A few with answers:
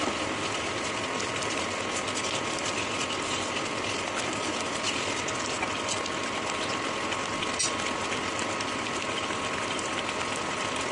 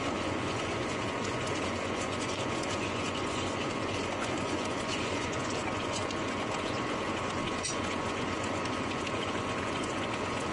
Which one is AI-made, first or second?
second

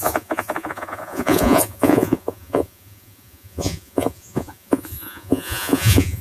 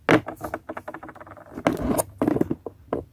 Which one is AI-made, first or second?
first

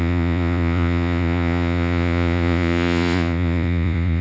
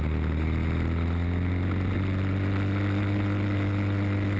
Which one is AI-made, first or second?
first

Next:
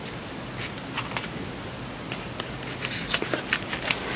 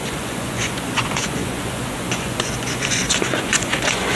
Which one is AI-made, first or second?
second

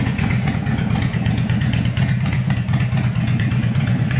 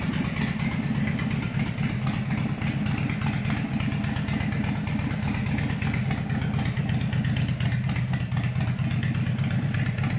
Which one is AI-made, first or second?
first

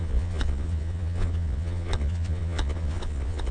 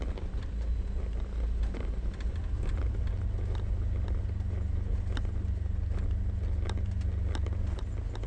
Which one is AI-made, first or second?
first